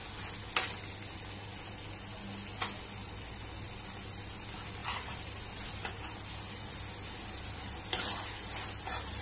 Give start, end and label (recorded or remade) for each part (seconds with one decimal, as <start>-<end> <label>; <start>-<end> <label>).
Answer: 0.0-4.8 recorded; 4.8-6.1 remade; 6.1-9.2 recorded